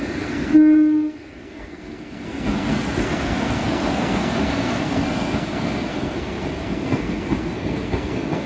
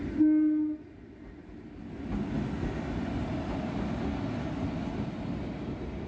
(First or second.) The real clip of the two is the second